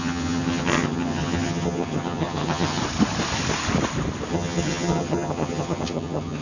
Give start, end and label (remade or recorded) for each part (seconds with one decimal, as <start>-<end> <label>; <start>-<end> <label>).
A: 0.0-2.8 remade; 2.8-4.3 recorded; 4.3-6.4 remade